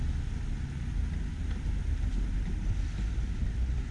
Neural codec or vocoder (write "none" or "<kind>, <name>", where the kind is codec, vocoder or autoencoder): none